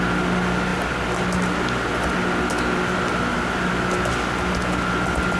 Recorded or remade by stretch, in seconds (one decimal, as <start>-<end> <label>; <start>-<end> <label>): 0.0-5.4 recorded